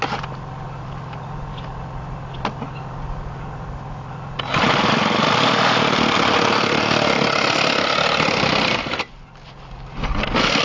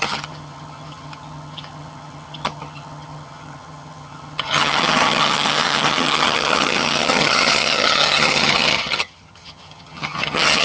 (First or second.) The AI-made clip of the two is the second